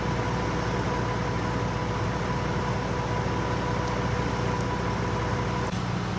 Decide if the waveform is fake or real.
real